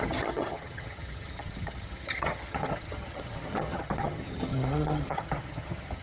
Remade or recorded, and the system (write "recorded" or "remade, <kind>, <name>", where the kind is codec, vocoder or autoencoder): remade, vocoder, HiFi-GAN